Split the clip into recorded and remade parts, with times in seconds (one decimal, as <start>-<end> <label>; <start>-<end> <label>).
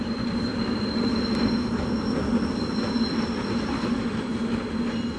0.0-5.2 recorded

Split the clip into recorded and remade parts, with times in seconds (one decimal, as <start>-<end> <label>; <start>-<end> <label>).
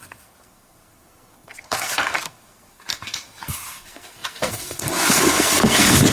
0.0-6.1 remade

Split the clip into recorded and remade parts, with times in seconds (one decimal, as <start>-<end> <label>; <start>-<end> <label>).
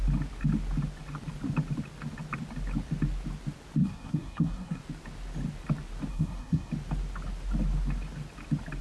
0.0-3.8 recorded; 3.8-4.8 remade; 4.8-6.1 recorded; 6.1-6.7 remade; 6.7-8.8 recorded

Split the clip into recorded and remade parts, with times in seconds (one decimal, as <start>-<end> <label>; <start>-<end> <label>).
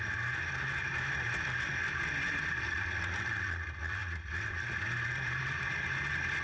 0.0-6.4 recorded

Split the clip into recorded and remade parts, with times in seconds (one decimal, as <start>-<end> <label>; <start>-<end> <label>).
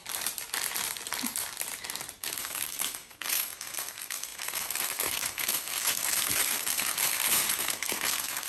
0.0-2.2 recorded; 2.2-8.5 remade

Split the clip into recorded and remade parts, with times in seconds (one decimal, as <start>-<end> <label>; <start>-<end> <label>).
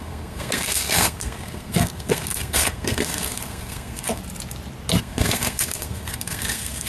0.0-4.2 remade; 4.2-5.0 recorded; 5.0-6.9 remade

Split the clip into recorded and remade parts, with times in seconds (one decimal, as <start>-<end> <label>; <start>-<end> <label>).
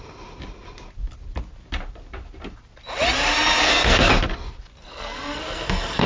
0.0-3.6 recorded; 3.6-4.1 remade; 4.1-4.8 recorded; 4.8-6.1 remade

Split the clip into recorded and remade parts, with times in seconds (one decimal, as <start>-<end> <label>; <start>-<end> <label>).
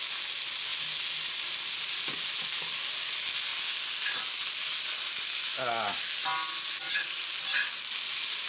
0.0-8.5 recorded